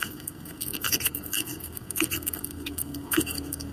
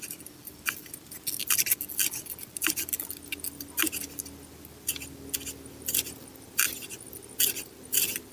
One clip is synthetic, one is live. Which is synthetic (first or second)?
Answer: first